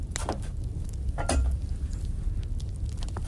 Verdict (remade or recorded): recorded